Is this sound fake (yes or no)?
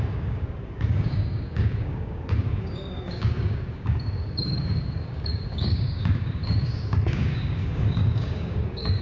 yes